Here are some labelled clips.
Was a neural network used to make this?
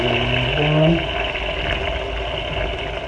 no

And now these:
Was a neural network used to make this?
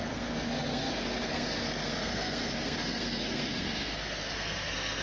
yes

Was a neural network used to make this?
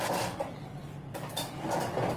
no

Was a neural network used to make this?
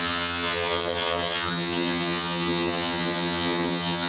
yes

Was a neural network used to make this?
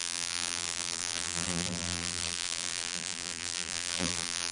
yes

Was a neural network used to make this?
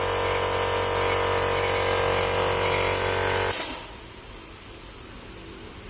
no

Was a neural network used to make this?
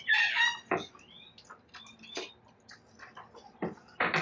no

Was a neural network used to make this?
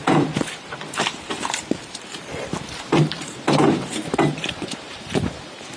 yes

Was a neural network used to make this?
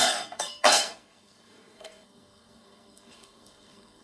yes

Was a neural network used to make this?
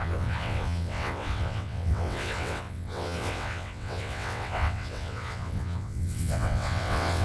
yes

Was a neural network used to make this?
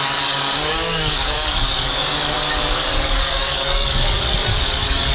yes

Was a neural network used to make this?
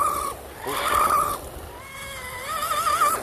no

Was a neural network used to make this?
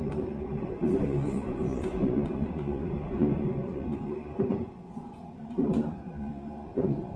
yes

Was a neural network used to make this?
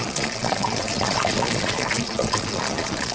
yes